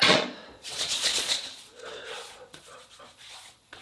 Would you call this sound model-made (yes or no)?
yes